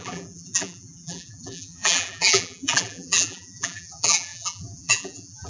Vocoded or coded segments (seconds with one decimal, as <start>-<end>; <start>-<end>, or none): 0.0-5.5